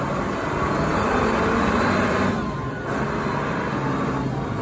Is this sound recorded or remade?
recorded